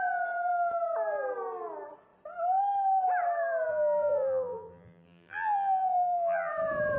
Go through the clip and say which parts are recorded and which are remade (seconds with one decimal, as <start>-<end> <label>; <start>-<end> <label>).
0.0-3.7 recorded; 3.7-6.5 remade; 6.5-7.0 recorded